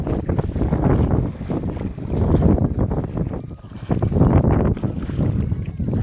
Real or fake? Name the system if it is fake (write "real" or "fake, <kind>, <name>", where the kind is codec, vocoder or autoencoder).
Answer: real